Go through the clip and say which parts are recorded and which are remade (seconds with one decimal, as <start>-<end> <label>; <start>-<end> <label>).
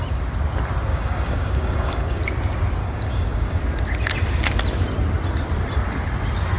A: 0.0-0.9 recorded; 0.9-2.2 remade; 2.2-2.8 recorded; 2.8-3.6 remade; 3.6-6.6 recorded